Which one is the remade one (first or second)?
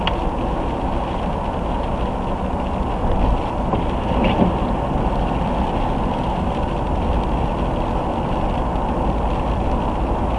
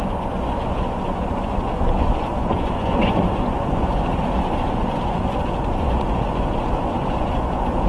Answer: second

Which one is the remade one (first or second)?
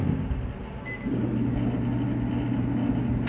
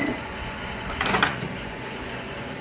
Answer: second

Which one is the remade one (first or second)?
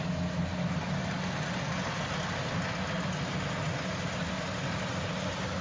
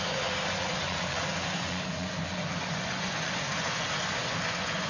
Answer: second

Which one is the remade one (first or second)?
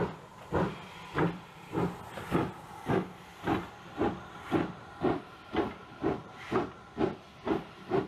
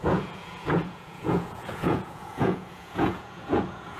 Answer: second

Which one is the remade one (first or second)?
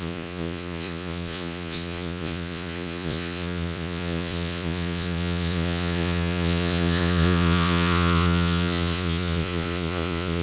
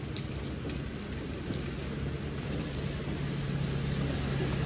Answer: first